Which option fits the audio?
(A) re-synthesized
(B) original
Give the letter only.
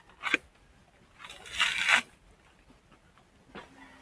B